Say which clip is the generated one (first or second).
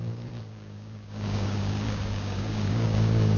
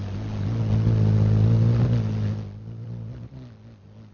first